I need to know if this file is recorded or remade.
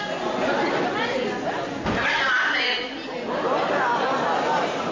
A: recorded